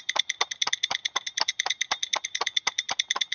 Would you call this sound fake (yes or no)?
no